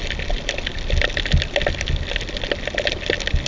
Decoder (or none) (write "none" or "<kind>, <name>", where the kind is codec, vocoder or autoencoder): none